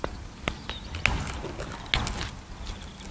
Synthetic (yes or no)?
no